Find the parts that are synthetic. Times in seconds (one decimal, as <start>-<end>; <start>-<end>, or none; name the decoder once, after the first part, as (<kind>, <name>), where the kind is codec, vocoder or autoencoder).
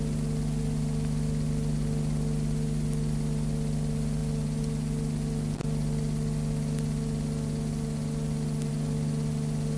none